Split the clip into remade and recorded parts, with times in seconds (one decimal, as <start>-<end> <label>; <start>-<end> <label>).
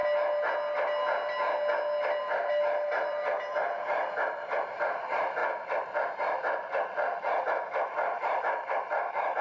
0.0-2.2 recorded; 2.2-5.4 remade; 5.4-6.1 recorded; 6.1-9.4 remade